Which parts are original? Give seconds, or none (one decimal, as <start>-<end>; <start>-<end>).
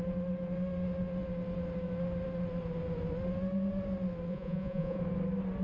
0.0-4.3; 5.0-5.6